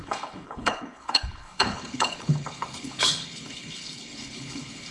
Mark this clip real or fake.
fake